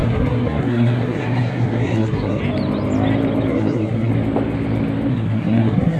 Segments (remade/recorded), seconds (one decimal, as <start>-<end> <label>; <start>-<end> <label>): 0.0-2.4 remade; 2.4-3.5 recorded; 3.5-4.1 remade; 4.1-5.1 recorded; 5.1-6.0 remade